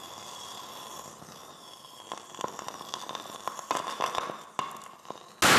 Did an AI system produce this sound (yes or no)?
no